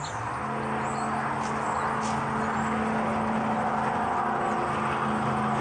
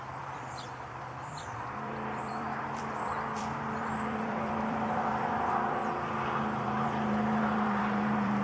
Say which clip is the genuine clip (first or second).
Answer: first